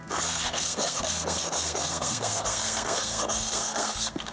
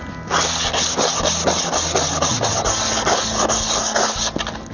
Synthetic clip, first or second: first